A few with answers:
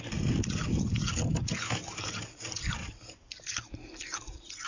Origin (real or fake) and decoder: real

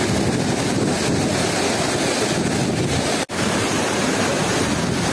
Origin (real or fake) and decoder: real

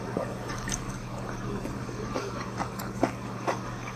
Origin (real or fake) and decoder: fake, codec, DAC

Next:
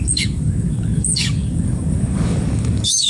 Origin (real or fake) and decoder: fake, codec, DAC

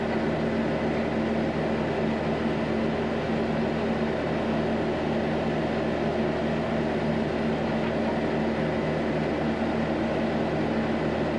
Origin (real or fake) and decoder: real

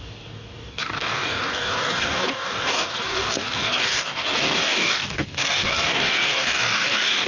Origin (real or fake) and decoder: fake, codec, DAC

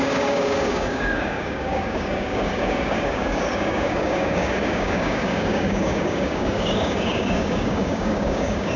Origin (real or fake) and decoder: fake, codec, DAC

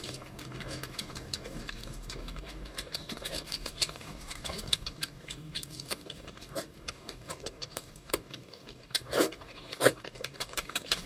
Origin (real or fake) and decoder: fake, codec, DAC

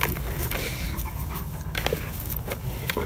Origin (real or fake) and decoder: fake, codec, DAC